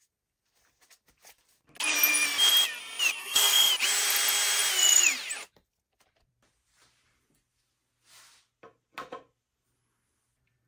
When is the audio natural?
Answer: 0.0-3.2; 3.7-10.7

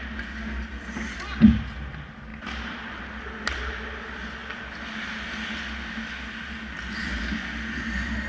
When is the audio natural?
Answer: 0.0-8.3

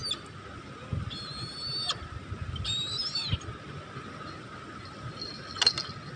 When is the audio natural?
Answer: 0.0-6.2

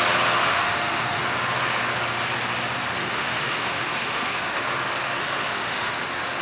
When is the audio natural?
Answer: 0.0-0.4; 1.2-3.0; 4.6-5.2; 5.9-6.4